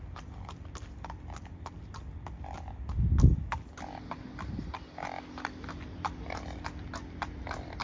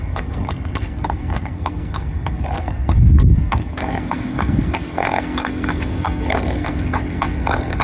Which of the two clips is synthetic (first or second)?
second